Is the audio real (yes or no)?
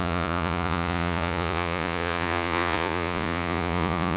no